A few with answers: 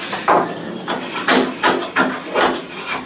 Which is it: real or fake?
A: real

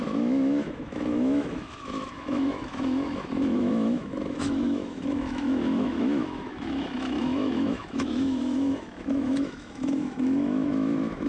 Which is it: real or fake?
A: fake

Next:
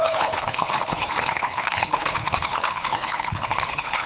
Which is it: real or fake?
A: fake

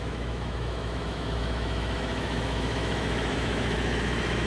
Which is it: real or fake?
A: fake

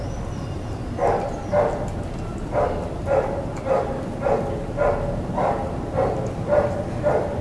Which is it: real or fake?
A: real